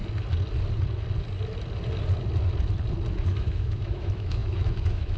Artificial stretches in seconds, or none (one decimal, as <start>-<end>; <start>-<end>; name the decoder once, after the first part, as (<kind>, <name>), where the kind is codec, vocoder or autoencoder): 3.1-5.2 (autoencoder, DAC-VAE)